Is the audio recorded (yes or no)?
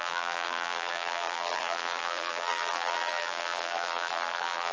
no